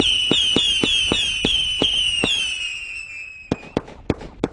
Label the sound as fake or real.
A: real